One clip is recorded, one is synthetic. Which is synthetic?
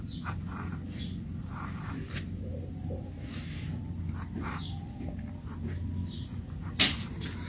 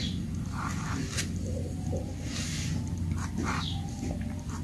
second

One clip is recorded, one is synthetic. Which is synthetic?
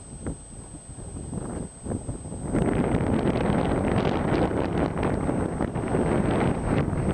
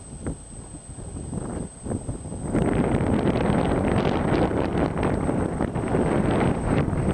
second